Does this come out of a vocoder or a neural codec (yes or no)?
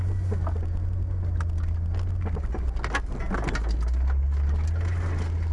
no